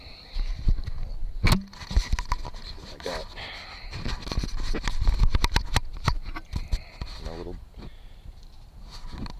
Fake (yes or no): no